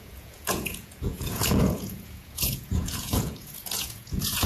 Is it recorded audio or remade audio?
remade